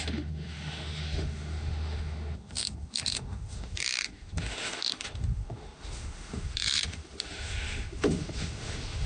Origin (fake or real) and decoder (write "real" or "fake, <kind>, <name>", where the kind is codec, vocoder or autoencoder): fake, autoencoder, DAC-VAE